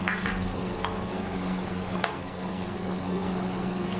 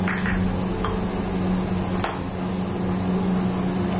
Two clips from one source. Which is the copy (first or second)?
first